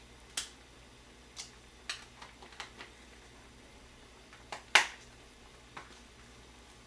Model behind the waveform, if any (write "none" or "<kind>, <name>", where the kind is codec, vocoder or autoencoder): none